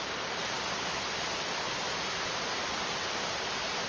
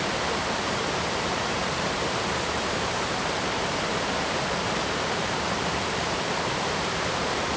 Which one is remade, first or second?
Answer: second